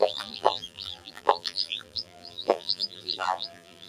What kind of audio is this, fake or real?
fake